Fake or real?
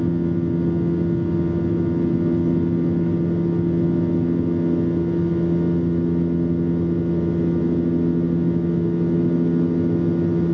real